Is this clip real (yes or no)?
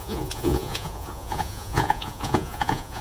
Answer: no